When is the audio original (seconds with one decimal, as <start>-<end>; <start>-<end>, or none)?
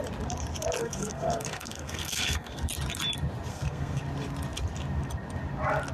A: 0.0-0.8; 2.7-3.5; 4.0-5.9